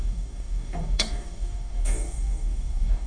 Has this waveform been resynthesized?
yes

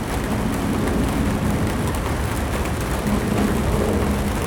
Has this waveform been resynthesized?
no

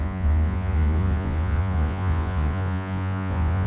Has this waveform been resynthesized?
yes